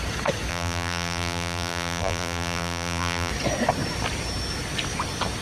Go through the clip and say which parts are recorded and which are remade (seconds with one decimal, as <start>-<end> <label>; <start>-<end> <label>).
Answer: 0.0-0.5 recorded; 0.5-3.3 remade; 3.3-5.4 recorded